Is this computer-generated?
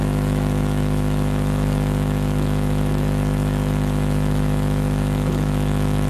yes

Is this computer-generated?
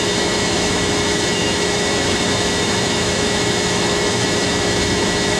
yes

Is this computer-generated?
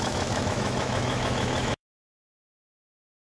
yes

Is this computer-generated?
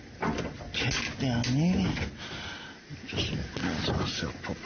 no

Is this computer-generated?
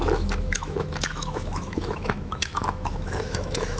yes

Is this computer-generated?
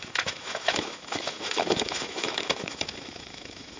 yes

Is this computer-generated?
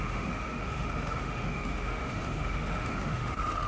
yes